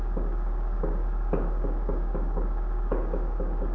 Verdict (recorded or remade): remade